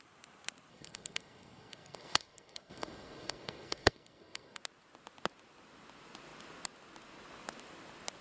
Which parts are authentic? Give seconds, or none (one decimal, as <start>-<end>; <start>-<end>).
0.0-0.7; 4.6-8.2